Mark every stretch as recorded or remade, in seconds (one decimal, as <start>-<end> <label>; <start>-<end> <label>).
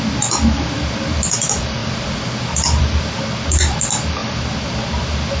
0.0-1.8 recorded; 1.8-3.2 remade; 3.2-5.4 recorded